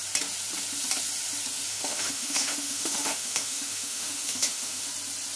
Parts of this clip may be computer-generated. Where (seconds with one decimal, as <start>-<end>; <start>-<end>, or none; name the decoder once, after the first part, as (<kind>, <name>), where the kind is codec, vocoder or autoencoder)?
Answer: 1.7-4.9 (autoencoder, DAC-VAE)